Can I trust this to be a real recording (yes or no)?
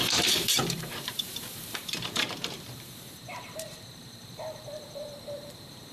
no